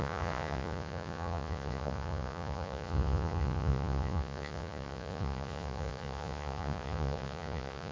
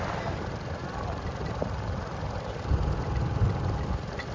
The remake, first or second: first